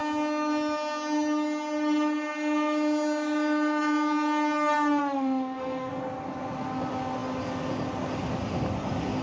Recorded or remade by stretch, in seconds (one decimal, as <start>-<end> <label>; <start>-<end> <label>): 0.0-5.0 recorded; 5.0-5.9 remade; 5.9-9.2 recorded